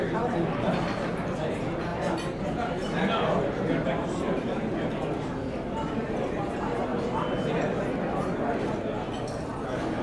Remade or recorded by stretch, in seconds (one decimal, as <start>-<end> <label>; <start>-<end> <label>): 0.0-1.9 remade; 1.9-3.4 recorded; 3.4-6.9 remade; 6.9-9.2 recorded; 9.2-10.0 remade